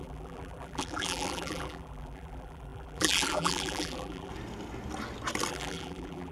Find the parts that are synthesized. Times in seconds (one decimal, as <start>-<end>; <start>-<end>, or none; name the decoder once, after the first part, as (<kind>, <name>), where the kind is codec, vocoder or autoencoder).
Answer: 0.0-4.3 (vocoder, BigVGAN v2); 5.5-6.3